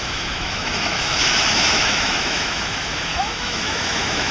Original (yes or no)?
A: no